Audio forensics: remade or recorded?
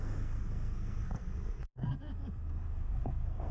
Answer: remade